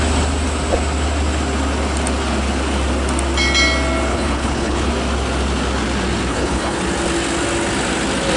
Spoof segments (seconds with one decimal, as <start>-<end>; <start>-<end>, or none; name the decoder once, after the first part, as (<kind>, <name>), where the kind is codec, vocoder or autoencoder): 4.1-4.9 (codec, HILCodec); 6.3-6.8